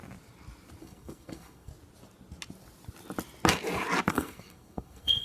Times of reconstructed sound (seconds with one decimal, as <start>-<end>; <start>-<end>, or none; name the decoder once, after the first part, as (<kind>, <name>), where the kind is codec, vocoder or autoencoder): 0.8-1.7 (codec, SNAC); 4.1-5.2